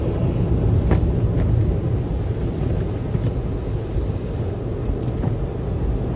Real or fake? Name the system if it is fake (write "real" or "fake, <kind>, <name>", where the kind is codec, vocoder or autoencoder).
real